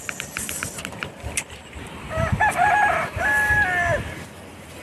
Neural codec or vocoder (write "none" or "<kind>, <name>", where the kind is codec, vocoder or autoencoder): none